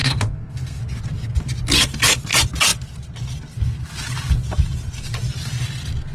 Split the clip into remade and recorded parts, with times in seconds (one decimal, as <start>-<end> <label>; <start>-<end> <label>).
0.0-0.8 remade; 0.8-6.1 recorded